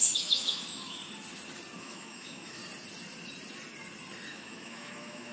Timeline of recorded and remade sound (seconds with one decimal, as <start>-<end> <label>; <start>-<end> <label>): 0.0-1.0 remade; 1.0-1.8 recorded; 1.8-2.6 remade; 2.6-4.3 recorded; 4.3-5.3 remade

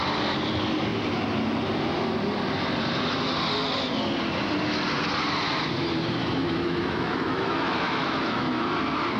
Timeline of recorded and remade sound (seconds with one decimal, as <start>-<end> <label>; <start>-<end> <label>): 0.0-6.2 recorded; 6.2-8.6 remade; 8.6-9.2 recorded

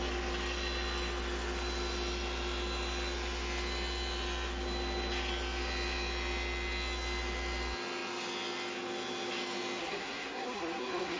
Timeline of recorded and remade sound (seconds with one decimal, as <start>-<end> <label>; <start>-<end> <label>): 0.0-9.8 recorded; 9.8-11.2 remade

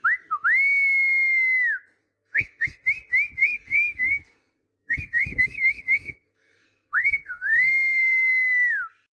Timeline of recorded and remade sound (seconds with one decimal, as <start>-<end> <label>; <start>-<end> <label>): 0.0-2.0 recorded; 2.0-2.8 remade; 2.8-3.4 recorded; 3.4-8.7 remade; 8.7-9.1 recorded

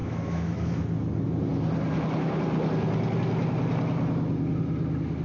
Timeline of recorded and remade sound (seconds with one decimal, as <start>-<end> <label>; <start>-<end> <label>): 0.0-0.8 remade; 0.8-5.2 recorded

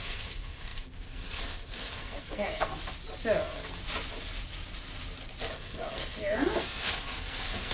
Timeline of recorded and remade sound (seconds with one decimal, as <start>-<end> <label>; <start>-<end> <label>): 0.0-2.7 remade; 2.7-3.4 recorded; 3.4-3.8 remade; 3.8-5.5 recorded; 5.5-7.7 remade

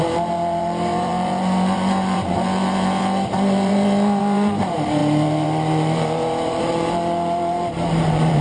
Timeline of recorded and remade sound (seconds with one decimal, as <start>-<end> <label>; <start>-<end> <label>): 0.0-8.4 remade

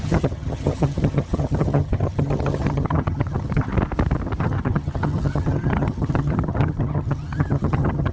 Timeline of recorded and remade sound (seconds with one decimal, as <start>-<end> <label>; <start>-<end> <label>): 0.0-3.7 remade; 3.7-4.4 recorded; 4.4-8.1 remade